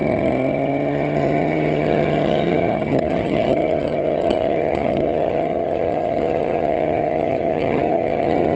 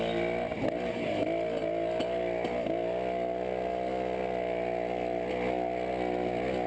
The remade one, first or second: first